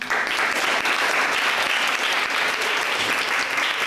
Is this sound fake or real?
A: real